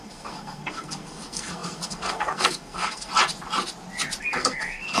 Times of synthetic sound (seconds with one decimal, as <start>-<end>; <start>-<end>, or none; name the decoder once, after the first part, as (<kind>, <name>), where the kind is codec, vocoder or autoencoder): 0.0-3.1 (codec, SNAC); 4.2-5.0